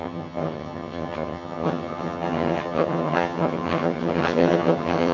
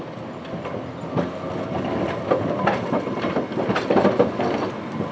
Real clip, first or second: second